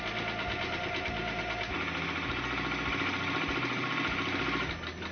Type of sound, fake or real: real